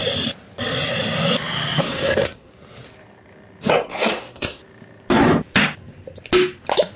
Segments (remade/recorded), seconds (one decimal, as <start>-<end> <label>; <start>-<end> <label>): 0.0-1.8 recorded; 1.8-2.5 remade; 2.5-3.7 recorded; 3.7-4.6 remade; 4.6-7.0 recorded

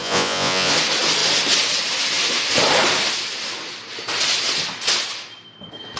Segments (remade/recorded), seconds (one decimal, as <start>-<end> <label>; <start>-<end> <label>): 0.0-0.7 remade; 0.7-6.0 recorded

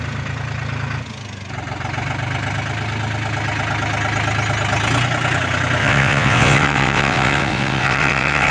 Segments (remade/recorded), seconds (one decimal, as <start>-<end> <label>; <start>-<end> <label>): 0.0-5.8 recorded; 5.8-8.5 remade

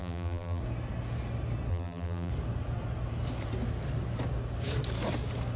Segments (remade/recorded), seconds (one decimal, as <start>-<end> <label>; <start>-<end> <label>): 0.0-0.6 remade; 0.6-1.7 recorded; 1.7-2.3 remade; 2.3-5.6 recorded

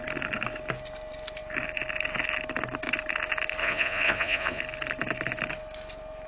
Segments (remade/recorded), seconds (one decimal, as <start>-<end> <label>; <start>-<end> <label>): 0.0-3.6 recorded; 3.6-4.6 remade; 4.6-6.3 recorded

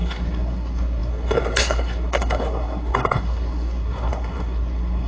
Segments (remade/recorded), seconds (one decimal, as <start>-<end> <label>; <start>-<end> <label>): 0.0-5.1 remade